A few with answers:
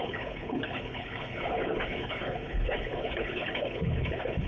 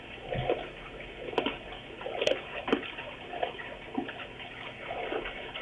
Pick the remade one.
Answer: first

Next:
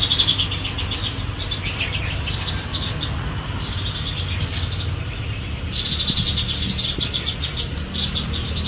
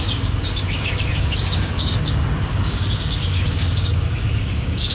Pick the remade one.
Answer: second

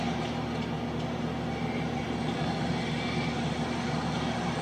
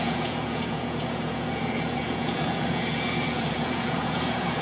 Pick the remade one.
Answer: second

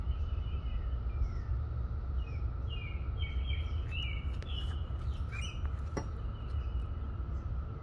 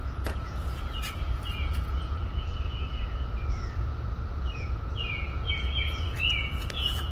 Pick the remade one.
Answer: second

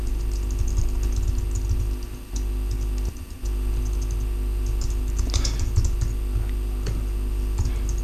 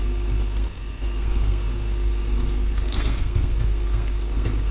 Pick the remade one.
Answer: second